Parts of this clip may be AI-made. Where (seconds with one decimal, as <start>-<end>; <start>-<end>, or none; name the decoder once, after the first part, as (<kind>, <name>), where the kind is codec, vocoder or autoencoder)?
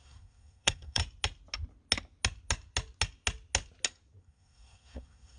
0.0-1.0 (codec, SNAC); 4.2-5.4